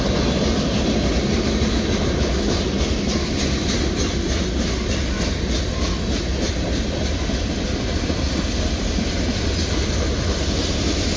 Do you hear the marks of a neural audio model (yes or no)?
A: no